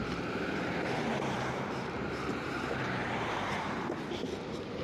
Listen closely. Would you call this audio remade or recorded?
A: remade